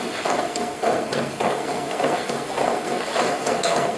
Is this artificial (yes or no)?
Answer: yes